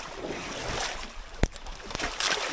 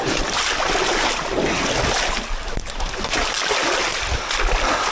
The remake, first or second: first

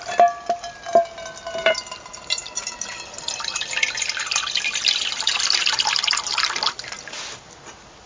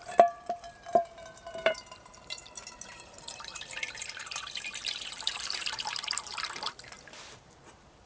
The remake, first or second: second